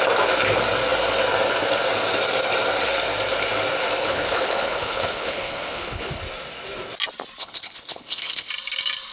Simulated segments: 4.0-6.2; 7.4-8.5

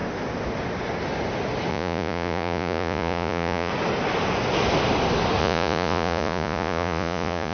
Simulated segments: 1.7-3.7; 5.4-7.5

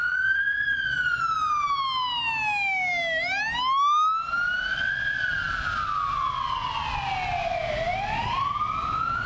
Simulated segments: 0.0-1.2; 4.7-5.3